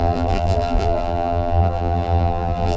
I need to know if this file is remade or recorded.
remade